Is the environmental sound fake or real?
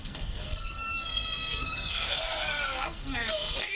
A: fake